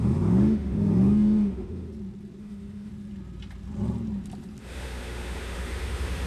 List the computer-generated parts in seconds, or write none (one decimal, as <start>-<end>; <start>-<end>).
0.0-1.9; 2.4-2.9; 4.6-6.3